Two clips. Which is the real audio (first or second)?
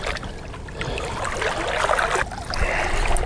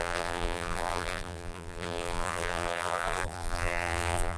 first